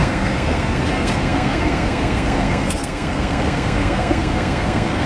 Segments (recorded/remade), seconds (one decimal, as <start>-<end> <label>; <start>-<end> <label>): 0.0-5.1 remade